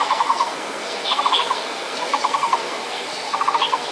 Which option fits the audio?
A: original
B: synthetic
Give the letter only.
B